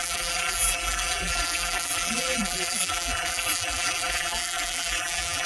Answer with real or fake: fake